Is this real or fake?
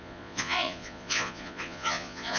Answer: fake